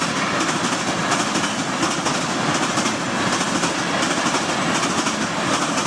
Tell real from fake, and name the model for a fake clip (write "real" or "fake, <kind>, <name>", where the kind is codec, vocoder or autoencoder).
real